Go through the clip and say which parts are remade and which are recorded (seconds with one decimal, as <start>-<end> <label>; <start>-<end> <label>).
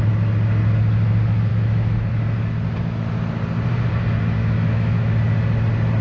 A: 0.0-1.5 recorded; 1.5-2.1 remade; 2.1-4.4 recorded; 4.4-5.2 remade; 5.2-6.0 recorded